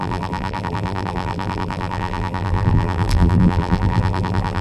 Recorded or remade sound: remade